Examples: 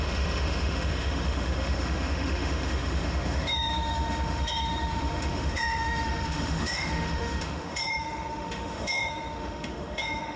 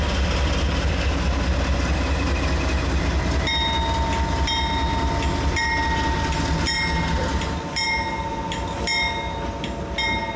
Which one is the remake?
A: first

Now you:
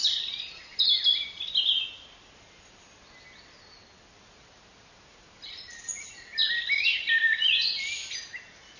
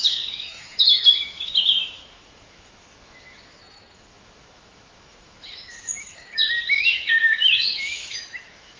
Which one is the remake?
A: second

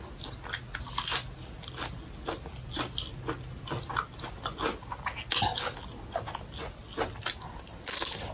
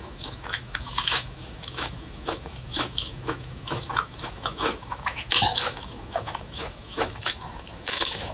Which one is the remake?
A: second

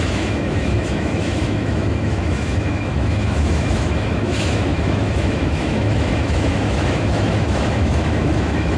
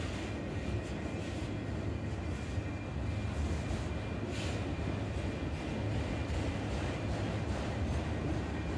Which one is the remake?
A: first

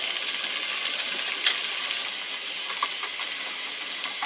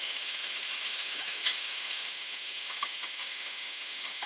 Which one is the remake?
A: second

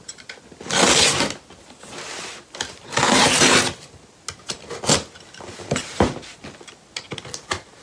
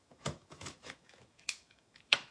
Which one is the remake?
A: second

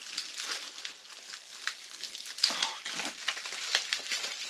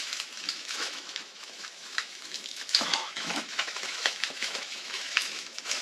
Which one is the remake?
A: second